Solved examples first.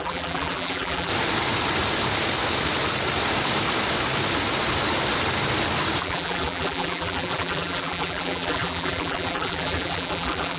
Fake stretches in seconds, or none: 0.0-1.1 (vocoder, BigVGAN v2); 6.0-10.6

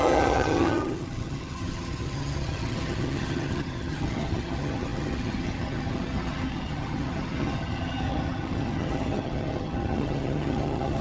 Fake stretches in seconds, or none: 0.0-11.0 (vocoder, HiFi-GAN)

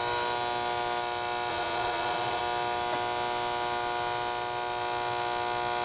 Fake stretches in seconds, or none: 1.5-2.4 (vocoder, Vocos)

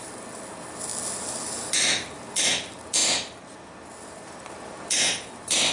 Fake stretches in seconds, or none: none

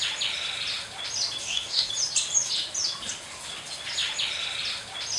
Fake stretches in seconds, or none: 1.4-1.9 (codec, DAC)

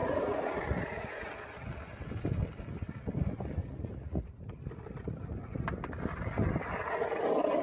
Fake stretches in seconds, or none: 0.0-1.3 (vocoder, Vocos); 3.6-4.5

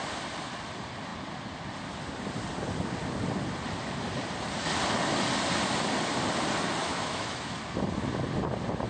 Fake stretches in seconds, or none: 6.8-7.6 (autoencoder, DAC-VAE)